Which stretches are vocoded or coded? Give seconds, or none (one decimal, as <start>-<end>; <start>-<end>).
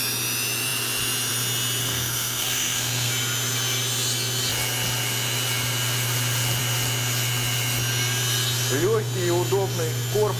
1.8-3.1